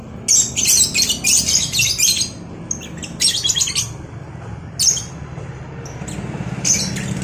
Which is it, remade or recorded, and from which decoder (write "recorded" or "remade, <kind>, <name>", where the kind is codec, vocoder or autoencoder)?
recorded